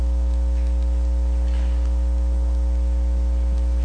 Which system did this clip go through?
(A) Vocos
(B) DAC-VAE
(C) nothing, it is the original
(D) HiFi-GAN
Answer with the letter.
C